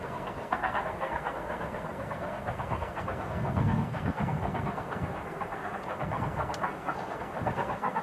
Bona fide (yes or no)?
no